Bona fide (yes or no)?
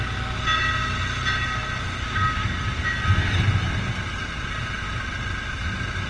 yes